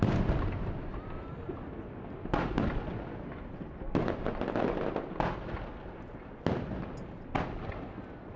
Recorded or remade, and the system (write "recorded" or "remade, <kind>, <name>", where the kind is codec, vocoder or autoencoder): recorded